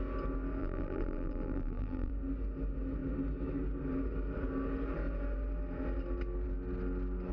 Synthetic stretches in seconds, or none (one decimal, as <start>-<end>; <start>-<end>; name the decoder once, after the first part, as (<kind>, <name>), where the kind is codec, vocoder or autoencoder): 0.6-2.1 (vocoder, BigVGAN v2)